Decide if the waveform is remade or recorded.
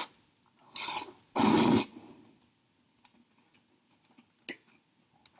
recorded